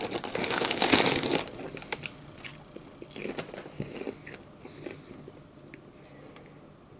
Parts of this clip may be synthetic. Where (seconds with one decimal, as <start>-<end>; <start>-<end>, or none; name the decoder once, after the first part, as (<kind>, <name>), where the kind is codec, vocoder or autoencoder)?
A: 0.4-1.0 (autoencoder, DAC-VAE)